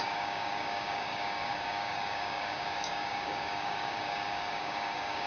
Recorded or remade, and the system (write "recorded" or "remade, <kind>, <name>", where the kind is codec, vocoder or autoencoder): remade, codec, DAC